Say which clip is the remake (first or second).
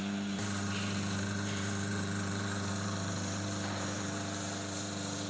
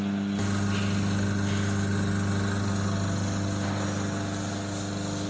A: first